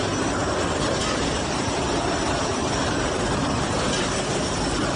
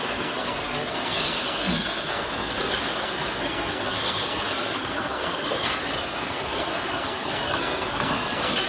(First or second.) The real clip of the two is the first